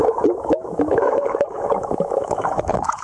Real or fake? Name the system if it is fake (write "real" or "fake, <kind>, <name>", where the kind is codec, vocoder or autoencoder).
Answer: fake, autoencoder, DAC-VAE